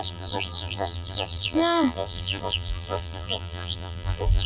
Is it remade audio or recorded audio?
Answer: remade